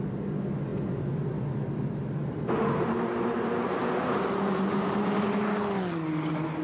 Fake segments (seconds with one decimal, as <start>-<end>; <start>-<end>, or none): none